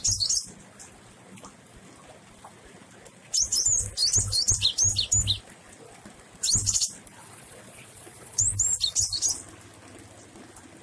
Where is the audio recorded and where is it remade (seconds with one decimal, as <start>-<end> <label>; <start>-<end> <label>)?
0.0-7.1 recorded; 7.1-8.4 remade; 8.4-10.8 recorded

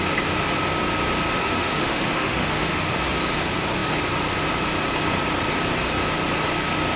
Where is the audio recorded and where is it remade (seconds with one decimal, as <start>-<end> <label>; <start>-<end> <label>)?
0.0-1.4 recorded; 1.4-3.1 remade; 3.1-7.0 recorded

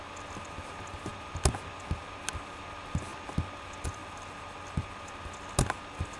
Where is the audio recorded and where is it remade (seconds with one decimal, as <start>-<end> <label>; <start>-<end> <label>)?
0.0-6.2 recorded

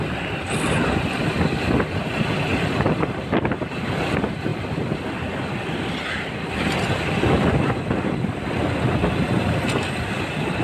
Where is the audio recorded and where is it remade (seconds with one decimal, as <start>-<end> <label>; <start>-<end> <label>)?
0.0-4.5 remade; 4.5-7.0 recorded; 7.0-10.6 remade

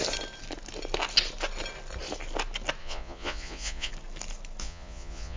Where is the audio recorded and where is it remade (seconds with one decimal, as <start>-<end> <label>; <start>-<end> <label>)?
0.0-2.8 recorded; 2.8-3.9 remade; 3.9-4.6 recorded; 4.6-5.4 remade

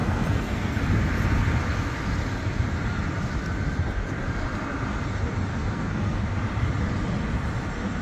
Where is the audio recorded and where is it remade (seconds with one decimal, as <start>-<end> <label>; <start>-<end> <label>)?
0.0-0.8 remade; 0.8-5.5 recorded; 5.5-6.2 remade; 6.2-8.0 recorded